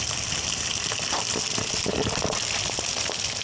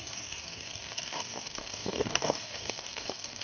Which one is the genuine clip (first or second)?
first